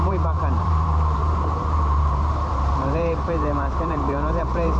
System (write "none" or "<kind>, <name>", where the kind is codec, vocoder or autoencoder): vocoder, BigVGAN v2